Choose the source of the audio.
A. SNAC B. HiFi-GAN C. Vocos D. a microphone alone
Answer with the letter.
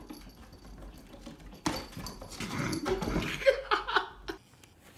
D